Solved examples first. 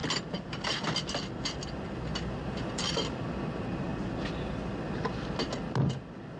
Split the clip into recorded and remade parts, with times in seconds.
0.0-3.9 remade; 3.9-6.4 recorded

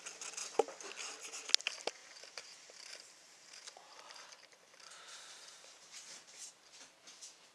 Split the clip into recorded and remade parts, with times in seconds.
0.0-2.0 recorded; 2.0-6.5 remade; 6.5-7.5 recorded